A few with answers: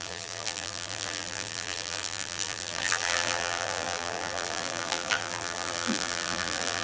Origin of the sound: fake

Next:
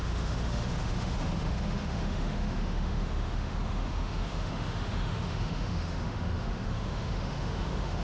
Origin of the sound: fake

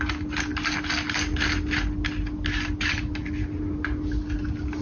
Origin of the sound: real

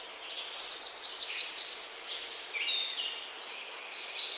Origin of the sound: real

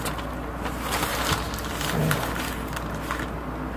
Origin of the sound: real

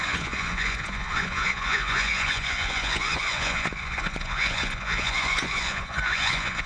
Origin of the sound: fake